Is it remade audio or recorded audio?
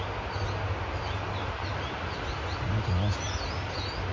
recorded